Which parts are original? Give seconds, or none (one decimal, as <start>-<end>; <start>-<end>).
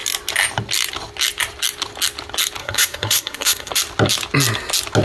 0.0-2.6; 3.7-5.0